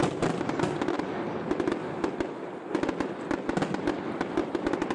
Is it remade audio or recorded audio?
recorded